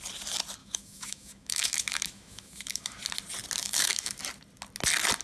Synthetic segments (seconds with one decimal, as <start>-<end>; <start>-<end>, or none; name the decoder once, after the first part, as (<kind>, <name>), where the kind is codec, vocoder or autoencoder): 0.6-3.0 (autoencoder, DAC-VAE); 3.6-4.2